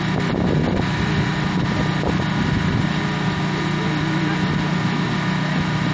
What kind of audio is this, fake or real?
real